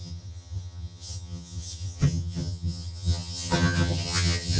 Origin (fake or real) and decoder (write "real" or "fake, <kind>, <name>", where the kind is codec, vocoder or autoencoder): fake, vocoder, HiFi-GAN